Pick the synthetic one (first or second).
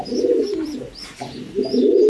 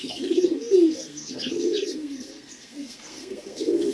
second